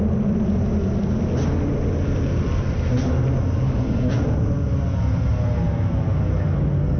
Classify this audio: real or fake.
real